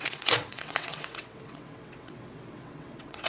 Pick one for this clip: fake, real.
fake